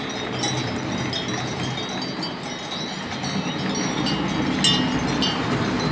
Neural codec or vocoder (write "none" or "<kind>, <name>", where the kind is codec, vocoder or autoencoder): none